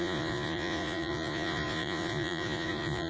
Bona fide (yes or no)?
no